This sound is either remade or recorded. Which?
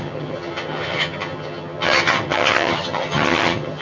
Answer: remade